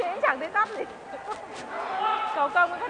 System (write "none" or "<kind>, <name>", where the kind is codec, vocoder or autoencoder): none